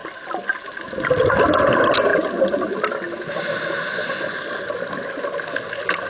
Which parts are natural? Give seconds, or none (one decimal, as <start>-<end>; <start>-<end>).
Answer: 0.0-6.1

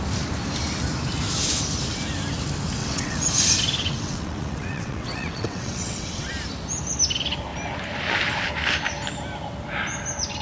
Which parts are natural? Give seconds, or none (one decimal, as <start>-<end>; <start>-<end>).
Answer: 0.0-2.8; 3.3-3.8; 6.3-10.4

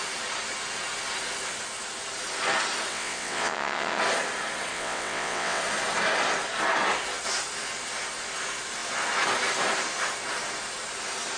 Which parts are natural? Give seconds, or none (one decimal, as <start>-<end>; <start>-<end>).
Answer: 0.0-2.9; 4.0-4.7; 5.6-11.4

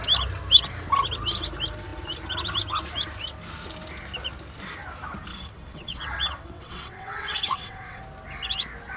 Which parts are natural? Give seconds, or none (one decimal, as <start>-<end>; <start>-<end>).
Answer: 0.0-5.3; 8.0-9.0

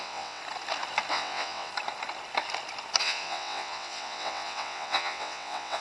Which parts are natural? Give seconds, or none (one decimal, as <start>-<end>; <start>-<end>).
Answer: 0.4-1.1; 1.7-3.0

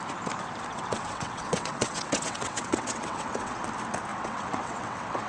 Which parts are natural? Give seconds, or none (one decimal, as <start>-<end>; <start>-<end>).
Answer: 0.0-0.7; 3.6-4.1

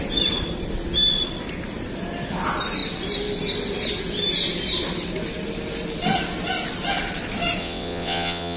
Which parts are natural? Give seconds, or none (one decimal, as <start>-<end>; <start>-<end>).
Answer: 0.0-7.6